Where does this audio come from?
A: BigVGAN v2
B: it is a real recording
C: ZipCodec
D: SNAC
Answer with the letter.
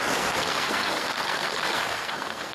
D